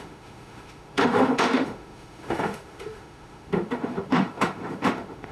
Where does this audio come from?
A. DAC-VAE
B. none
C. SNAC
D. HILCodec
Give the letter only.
A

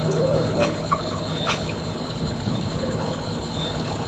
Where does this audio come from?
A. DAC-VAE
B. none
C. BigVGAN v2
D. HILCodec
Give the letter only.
D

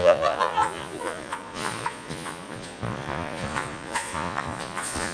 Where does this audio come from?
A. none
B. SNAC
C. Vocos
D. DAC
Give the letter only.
C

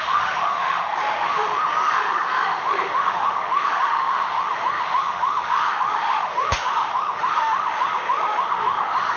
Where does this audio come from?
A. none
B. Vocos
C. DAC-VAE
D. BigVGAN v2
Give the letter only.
C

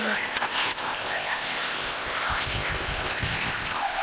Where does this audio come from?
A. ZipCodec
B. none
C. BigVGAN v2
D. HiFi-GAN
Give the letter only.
A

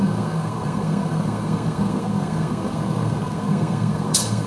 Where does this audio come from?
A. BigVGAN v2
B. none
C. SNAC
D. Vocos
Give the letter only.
C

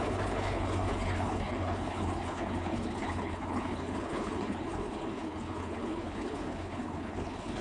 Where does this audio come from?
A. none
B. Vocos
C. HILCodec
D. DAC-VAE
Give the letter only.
C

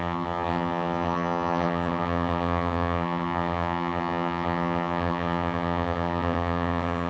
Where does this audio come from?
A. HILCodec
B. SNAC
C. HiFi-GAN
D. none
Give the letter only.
C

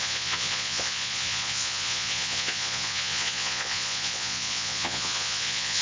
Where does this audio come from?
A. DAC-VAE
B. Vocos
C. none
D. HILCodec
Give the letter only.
B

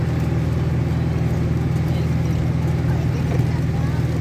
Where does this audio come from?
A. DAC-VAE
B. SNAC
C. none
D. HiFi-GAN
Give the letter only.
C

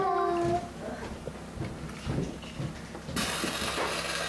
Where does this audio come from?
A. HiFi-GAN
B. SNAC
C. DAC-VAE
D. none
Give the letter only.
D